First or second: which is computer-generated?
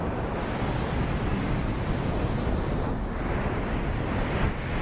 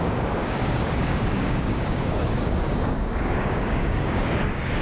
second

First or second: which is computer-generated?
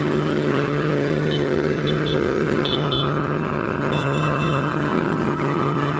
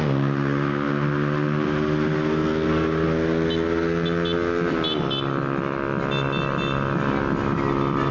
first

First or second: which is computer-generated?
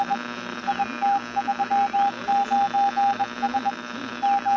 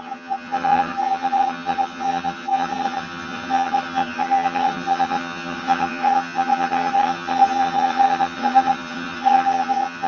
second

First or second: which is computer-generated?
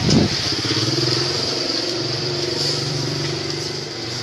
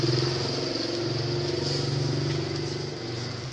first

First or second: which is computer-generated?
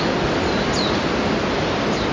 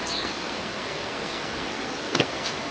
second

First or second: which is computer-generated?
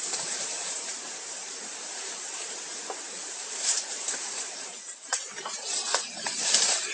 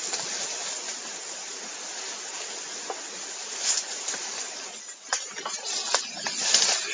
first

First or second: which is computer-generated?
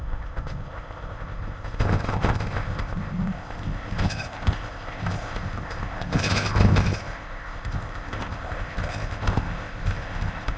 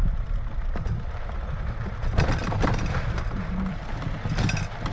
first